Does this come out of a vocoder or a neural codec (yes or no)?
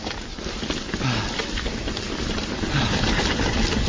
no